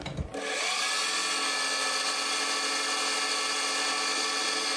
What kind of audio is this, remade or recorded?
recorded